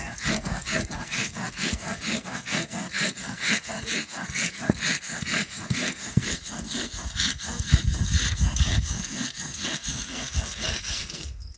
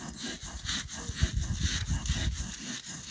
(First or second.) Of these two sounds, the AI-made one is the first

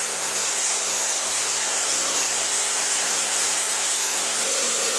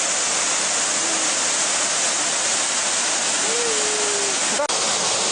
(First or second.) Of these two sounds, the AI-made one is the first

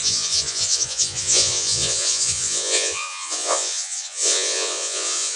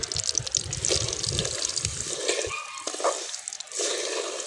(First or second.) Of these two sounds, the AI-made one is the first